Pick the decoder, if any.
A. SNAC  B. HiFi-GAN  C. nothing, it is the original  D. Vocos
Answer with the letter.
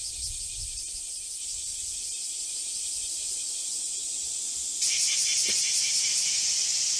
C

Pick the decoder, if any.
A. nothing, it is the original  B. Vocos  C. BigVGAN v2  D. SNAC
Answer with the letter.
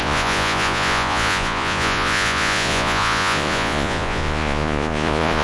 B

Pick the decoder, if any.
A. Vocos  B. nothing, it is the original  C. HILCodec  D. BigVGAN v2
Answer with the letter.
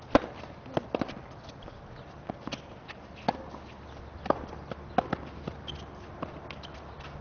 B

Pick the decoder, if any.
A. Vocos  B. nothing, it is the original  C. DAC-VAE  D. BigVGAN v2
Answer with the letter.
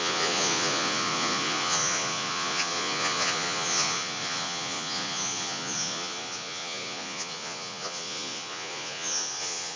A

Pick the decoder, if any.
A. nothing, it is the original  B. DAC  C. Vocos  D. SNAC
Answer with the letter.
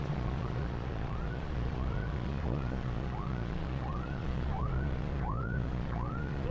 C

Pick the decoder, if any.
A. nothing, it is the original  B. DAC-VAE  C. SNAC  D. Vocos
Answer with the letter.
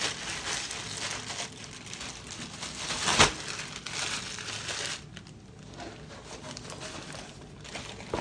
A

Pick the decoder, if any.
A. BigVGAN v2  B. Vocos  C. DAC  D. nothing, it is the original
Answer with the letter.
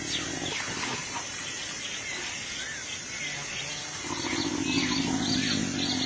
D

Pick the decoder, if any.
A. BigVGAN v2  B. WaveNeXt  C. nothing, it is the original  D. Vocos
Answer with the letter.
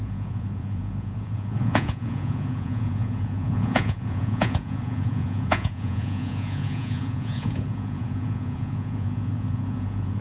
D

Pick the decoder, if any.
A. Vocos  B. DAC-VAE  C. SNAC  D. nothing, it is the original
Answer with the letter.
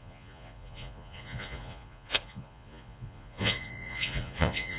A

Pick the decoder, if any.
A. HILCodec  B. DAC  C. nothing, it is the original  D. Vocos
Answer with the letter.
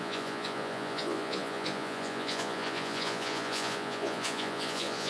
D